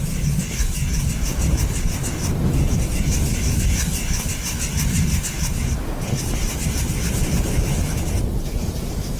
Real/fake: real